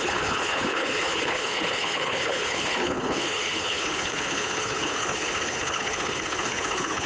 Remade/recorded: remade